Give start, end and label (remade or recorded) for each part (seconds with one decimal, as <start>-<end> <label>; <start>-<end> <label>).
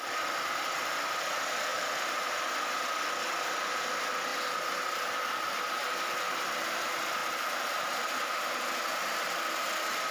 0.0-1.7 recorded; 1.7-2.3 remade; 2.3-7.2 recorded; 7.2-8.6 remade; 8.6-10.1 recorded